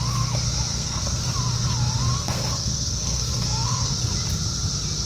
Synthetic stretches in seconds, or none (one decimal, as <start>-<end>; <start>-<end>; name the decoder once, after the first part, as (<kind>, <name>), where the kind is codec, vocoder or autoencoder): 0.7-1.2 (codec, SNAC); 2.2-3.9